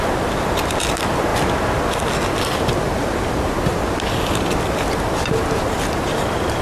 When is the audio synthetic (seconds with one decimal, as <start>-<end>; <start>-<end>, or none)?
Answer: none